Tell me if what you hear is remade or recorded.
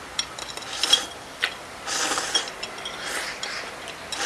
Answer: remade